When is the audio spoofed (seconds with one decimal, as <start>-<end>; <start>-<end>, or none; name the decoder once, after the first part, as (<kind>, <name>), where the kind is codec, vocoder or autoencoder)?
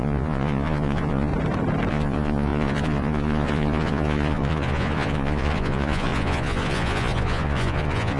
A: 0.0-1.3 (vocoder, Vocos); 1.9-8.2